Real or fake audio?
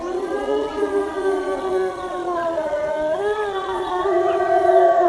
fake